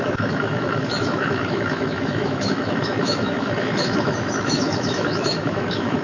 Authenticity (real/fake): fake